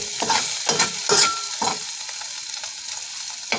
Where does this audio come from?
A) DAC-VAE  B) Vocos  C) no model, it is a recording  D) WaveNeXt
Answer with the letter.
C